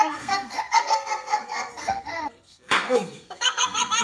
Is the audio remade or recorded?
remade